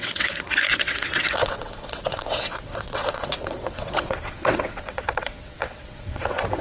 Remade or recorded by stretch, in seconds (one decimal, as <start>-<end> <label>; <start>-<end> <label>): 0.0-6.6 remade